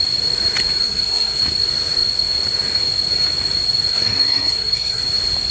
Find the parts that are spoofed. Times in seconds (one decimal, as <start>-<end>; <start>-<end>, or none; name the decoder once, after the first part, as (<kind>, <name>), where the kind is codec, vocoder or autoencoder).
0.8-1.4 (codec, SNAC); 3.9-5.0

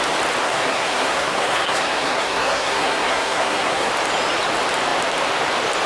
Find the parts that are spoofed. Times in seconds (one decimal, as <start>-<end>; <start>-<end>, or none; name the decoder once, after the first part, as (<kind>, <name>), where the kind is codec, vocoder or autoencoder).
0.4-3.9 (codec, SNAC)

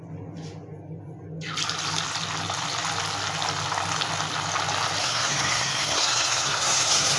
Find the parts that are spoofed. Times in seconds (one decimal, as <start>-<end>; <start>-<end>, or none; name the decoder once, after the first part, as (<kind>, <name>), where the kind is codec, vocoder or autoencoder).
5.0-7.2 (codec, SNAC)

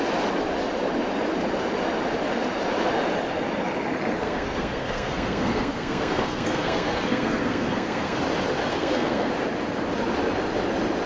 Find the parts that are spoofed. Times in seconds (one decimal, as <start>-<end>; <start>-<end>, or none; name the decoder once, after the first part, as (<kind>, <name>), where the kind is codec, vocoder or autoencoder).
4.2-8.2 (codec, SNAC); 8.7-9.3

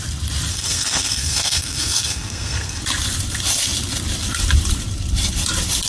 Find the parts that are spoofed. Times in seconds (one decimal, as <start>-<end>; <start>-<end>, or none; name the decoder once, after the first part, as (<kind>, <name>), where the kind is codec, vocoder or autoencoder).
0.5-2.8 (codec, SNAC)

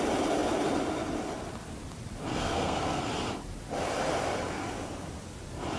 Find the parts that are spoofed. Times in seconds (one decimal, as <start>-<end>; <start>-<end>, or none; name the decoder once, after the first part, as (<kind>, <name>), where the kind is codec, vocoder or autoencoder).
2.3-3.0 (codec, SNAC)

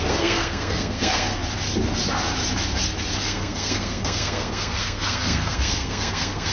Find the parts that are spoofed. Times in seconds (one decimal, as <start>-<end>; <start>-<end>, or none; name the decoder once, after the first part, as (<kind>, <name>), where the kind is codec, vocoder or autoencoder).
0.0-1.4 (codec, SNAC); 3.2-6.5

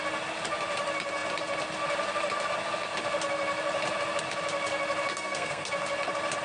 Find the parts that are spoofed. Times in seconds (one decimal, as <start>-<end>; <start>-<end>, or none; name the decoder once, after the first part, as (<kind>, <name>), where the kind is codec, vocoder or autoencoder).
5.1-5.7 (codec, SNAC)